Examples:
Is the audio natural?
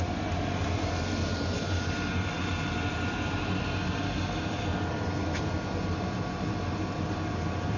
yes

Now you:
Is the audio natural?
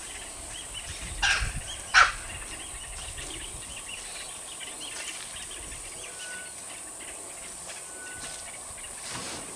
yes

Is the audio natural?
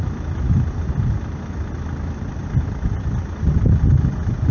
yes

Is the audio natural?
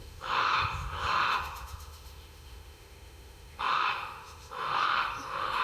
no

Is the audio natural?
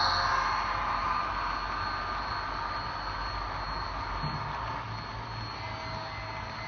yes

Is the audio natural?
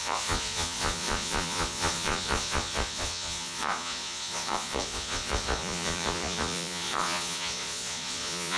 no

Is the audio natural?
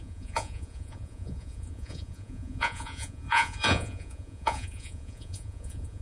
no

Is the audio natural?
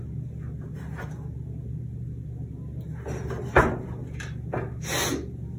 yes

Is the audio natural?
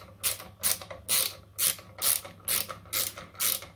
yes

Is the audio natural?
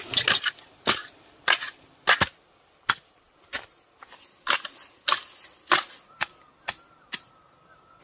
yes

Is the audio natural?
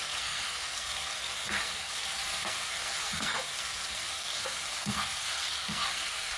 no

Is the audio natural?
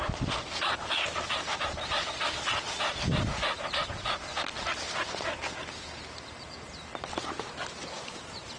yes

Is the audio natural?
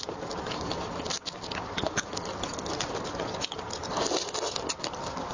yes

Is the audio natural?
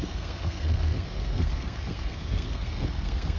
no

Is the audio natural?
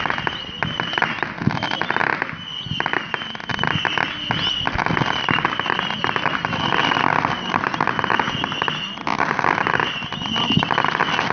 yes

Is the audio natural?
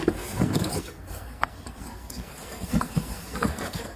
no